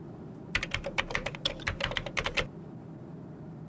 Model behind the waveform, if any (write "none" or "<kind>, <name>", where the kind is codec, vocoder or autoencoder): none